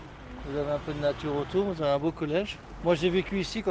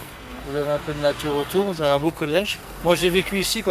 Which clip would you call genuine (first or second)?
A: first